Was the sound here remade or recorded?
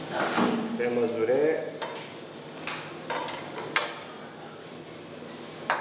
recorded